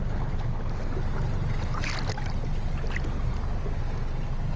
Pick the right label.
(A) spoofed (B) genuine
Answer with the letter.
B